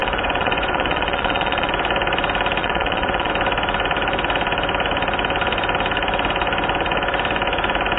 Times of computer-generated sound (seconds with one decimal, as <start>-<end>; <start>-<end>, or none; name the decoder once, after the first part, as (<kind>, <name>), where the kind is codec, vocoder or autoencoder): 0.0-1.7 (vocoder, Vocos); 2.6-3.3